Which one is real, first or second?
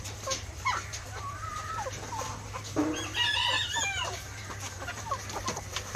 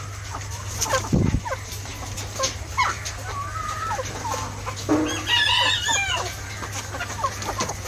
second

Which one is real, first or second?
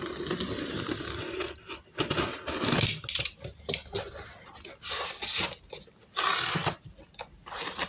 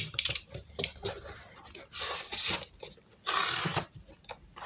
first